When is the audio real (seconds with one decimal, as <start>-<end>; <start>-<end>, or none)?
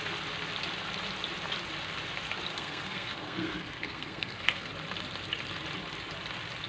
0.0-2.5; 4.7-6.7